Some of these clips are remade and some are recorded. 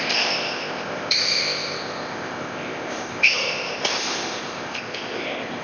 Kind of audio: remade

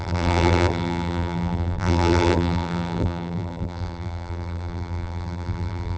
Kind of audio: remade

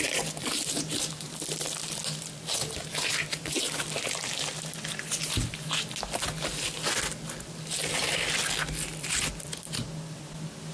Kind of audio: recorded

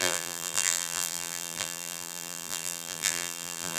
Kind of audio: remade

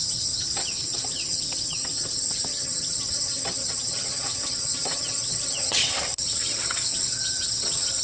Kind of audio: remade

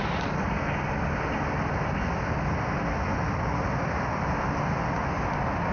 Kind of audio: recorded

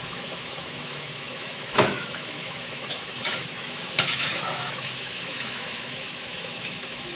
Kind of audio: remade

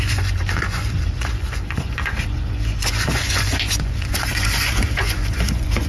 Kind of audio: remade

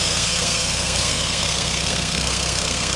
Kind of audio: remade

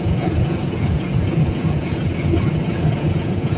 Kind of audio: remade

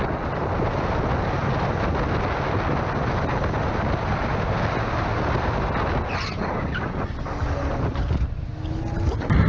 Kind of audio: recorded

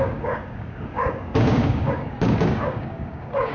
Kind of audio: remade